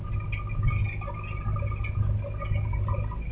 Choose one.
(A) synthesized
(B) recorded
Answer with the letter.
B